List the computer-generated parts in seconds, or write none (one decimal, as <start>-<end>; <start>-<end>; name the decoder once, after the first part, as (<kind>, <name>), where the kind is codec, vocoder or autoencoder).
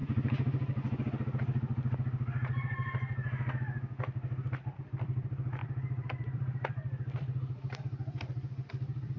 4.8-9.2 (vocoder, BigVGAN v2)